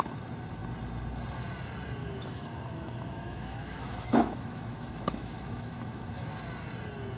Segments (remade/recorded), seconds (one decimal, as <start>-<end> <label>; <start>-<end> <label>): 0.0-2.0 recorded; 2.0-6.3 remade; 6.3-7.2 recorded